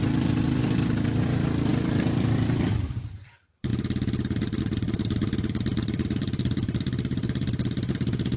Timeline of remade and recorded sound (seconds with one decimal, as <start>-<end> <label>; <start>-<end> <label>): 0.0-3.7 remade; 3.7-4.6 recorded; 4.6-8.4 remade

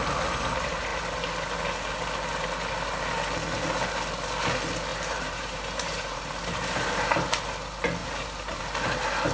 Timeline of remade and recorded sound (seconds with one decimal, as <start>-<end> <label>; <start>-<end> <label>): 0.0-4.9 recorded; 4.9-7.4 remade; 7.4-8.0 recorded; 8.0-8.6 remade; 8.6-9.3 recorded

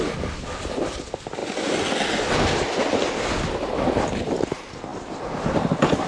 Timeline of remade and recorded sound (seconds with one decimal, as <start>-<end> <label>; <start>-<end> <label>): 0.0-6.1 recorded

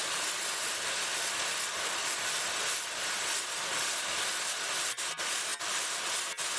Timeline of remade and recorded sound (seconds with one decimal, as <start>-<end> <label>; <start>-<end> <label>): 0.0-5.5 recorded; 5.5-6.0 remade; 6.0-6.6 recorded

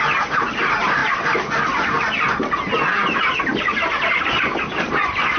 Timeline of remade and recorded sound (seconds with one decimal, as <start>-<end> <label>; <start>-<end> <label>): 0.0-5.4 recorded

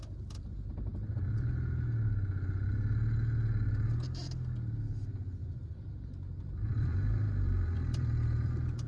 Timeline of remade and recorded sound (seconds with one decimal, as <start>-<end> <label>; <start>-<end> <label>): 0.0-0.9 recorded; 0.9-1.5 remade; 1.5-5.4 recorded; 5.4-8.9 remade

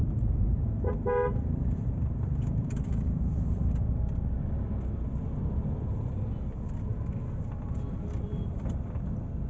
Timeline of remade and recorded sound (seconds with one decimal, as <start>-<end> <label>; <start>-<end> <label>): 0.0-3.7 remade; 3.7-8.3 recorded; 8.3-8.8 remade; 8.8-9.5 recorded

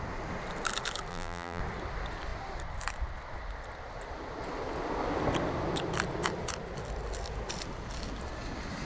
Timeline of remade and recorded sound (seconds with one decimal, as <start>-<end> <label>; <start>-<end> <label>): 0.0-1.1 recorded; 1.1-1.6 remade; 1.6-8.9 recorded